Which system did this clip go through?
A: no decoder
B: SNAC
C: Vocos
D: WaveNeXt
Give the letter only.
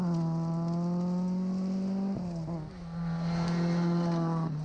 A